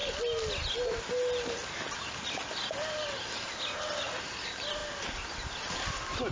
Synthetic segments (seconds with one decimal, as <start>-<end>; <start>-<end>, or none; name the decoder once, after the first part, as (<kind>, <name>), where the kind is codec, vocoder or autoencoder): none